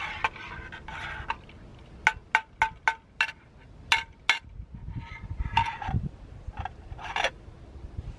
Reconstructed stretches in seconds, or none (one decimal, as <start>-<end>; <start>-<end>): none